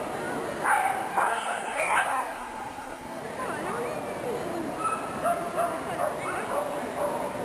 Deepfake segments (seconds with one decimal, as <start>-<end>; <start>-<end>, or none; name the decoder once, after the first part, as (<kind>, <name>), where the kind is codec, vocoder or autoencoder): 1.1-3.2 (codec, SNAC)